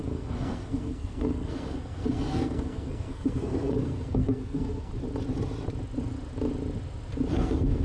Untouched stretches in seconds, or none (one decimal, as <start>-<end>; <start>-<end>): 4.9-7.3